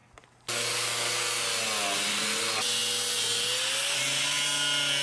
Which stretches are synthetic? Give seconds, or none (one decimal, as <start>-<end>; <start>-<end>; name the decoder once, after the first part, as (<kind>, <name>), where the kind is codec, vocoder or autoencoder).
none